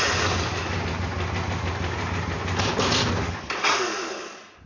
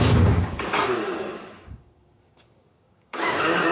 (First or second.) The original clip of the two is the first